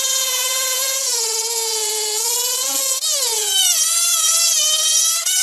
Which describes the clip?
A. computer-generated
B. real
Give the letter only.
A